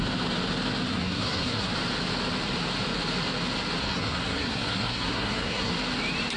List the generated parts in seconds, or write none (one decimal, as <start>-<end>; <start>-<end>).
0.9-1.7; 3.8-5.7